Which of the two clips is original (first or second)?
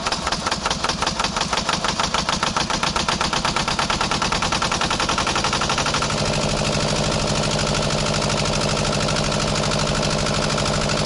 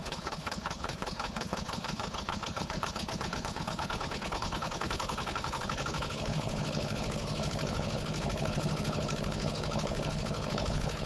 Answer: first